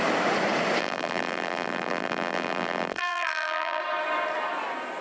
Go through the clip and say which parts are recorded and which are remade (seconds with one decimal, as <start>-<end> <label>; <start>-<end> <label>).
0.0-0.8 recorded; 0.8-3.8 remade; 3.8-5.0 recorded